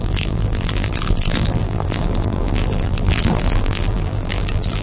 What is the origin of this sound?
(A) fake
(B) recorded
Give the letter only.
A